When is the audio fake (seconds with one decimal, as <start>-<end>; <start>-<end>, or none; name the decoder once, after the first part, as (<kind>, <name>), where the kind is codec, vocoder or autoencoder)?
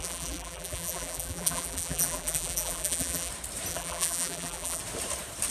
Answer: 0.0-3.3 (vocoder, BigVGAN v2); 3.7-4.8